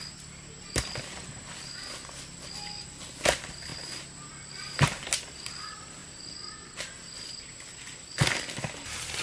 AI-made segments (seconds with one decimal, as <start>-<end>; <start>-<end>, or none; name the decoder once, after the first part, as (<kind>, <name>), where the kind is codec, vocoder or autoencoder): none